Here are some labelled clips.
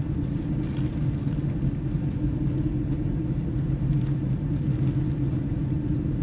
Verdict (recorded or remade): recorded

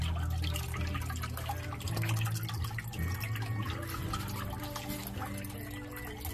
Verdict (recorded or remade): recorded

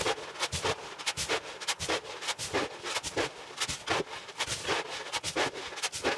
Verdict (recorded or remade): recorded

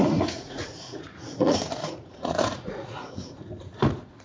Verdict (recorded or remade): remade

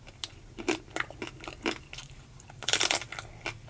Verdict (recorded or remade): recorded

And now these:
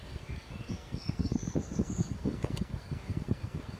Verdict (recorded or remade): remade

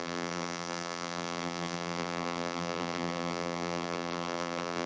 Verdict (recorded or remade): remade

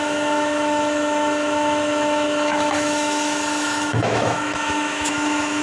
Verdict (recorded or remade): remade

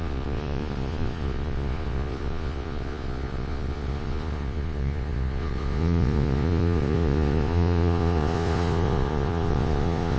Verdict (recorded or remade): remade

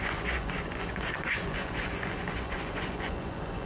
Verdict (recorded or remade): remade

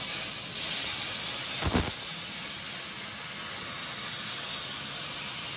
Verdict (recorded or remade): recorded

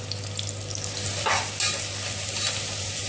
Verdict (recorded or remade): recorded